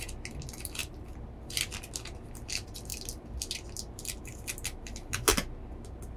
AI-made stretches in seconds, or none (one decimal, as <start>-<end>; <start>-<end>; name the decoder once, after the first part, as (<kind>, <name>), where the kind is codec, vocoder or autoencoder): none